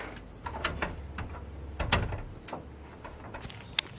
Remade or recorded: recorded